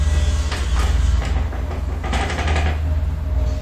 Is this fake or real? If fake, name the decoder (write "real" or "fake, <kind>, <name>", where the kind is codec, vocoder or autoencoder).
real